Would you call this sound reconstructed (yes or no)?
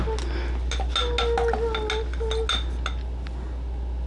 no